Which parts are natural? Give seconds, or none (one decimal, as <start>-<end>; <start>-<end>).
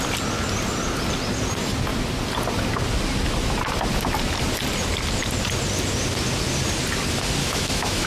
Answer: 0.0-7.4